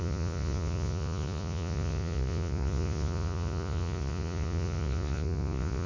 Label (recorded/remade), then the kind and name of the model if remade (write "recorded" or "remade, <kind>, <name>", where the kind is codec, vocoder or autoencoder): remade, vocoder, Vocos